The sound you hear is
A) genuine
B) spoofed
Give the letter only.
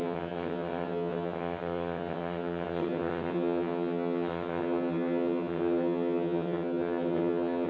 B